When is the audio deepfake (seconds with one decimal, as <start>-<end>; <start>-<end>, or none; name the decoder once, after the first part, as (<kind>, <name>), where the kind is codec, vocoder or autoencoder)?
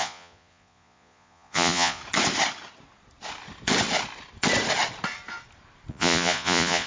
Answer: 0.0-2.0 (vocoder, Vocos); 5.9-6.9